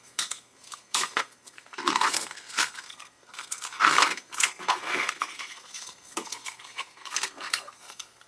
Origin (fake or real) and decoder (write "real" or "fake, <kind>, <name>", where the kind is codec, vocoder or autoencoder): fake, codec, SNAC